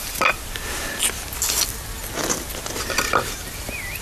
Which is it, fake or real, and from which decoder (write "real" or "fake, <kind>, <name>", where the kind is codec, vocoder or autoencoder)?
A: real